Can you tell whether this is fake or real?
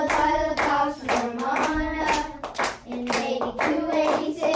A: fake